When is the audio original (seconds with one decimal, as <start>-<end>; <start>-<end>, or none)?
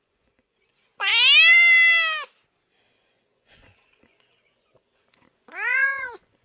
1.1-2.9